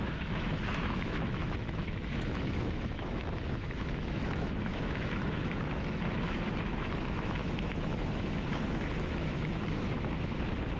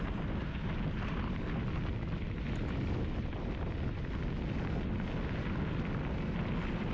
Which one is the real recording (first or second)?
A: second